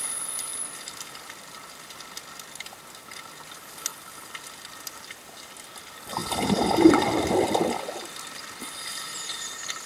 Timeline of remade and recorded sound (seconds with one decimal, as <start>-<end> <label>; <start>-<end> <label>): 0.0-0.5 recorded; 0.5-1.1 remade; 1.1-3.9 recorded; 3.9-4.7 remade; 4.7-6.2 recorded; 6.2-7.5 remade; 7.5-9.9 recorded